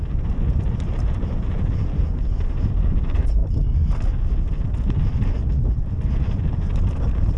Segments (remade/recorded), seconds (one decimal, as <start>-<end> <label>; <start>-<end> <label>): 0.0-7.4 recorded